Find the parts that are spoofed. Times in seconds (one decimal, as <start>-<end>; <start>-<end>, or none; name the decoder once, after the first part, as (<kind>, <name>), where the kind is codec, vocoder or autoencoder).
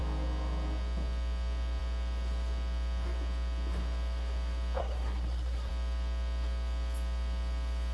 4.8-5.7 (codec, SNAC)